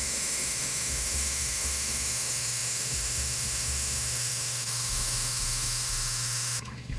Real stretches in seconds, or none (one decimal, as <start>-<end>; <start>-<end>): none